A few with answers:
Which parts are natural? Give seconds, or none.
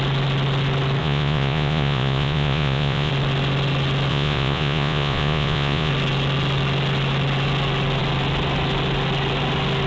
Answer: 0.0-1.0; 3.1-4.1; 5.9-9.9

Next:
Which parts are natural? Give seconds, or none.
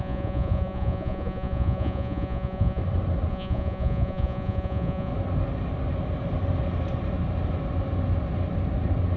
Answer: 2.8-3.3; 5.1-9.2